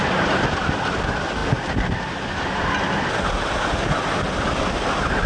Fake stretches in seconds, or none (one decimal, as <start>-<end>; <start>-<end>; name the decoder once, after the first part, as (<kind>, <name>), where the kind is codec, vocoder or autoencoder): none